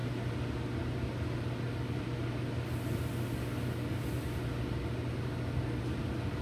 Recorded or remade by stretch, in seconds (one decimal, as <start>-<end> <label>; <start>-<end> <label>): 0.0-6.4 recorded